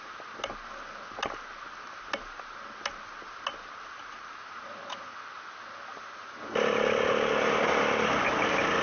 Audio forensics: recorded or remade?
recorded